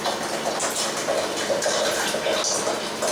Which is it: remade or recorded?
recorded